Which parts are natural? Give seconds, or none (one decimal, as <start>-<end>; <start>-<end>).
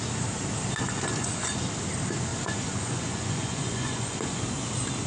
0.0-0.8; 1.5-2.3; 4.4-5.1